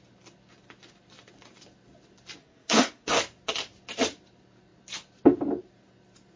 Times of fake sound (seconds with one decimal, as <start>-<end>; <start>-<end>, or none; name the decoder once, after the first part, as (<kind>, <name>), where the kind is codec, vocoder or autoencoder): 2.4-3.2 (codec, SNAC)